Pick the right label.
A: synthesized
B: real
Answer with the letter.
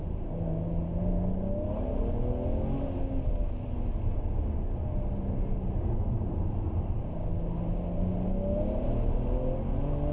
B